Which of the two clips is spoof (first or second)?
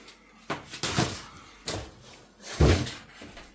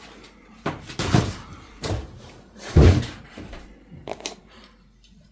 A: second